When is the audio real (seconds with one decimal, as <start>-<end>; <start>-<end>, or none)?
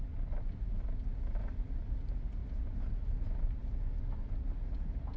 0.0-5.2